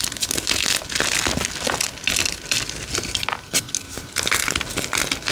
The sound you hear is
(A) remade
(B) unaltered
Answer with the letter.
B